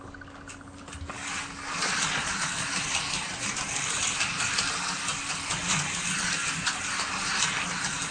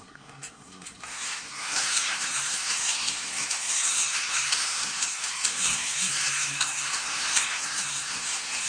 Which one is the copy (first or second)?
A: second